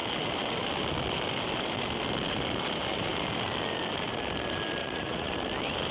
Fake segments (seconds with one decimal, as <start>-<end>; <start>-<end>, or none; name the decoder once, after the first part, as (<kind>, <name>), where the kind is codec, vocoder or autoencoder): 4.8-5.3 (vocoder, Vocos)